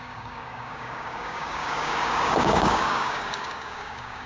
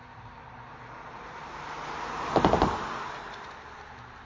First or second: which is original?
second